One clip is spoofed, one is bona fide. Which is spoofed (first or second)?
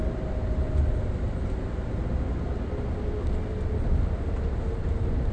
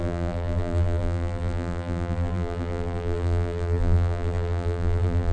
second